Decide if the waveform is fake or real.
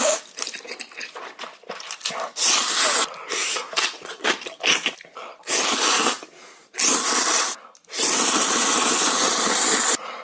real